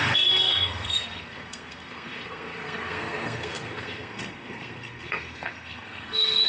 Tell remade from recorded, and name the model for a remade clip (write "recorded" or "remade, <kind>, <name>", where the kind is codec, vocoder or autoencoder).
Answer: remade, codec, SNAC